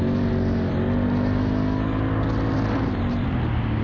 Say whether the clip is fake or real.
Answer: real